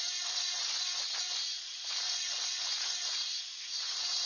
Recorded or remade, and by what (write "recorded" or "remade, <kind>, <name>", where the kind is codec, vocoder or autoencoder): remade, vocoder, Vocos